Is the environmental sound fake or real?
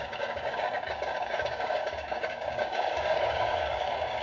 fake